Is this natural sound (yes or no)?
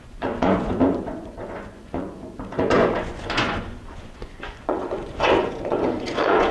no